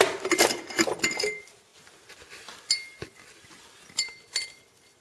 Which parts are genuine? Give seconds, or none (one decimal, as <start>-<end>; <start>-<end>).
0.0-5.0